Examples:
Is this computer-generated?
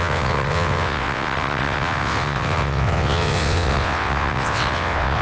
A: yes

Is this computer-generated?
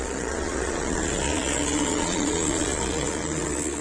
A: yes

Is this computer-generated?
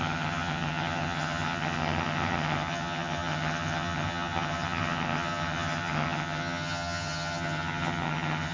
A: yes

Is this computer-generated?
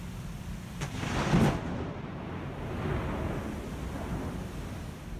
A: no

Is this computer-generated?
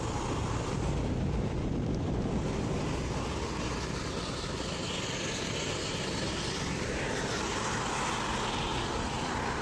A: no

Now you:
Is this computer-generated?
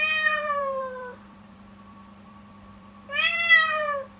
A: yes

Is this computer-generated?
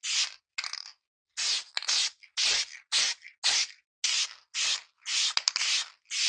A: no